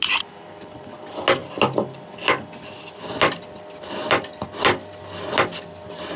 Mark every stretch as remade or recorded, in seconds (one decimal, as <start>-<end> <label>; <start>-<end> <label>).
0.0-6.2 recorded